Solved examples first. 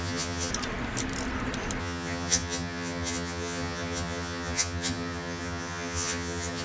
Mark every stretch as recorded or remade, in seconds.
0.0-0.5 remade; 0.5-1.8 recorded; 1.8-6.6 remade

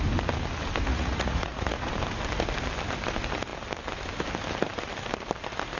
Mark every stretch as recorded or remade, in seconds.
0.0-0.9 recorded; 0.9-1.9 remade; 1.9-5.8 recorded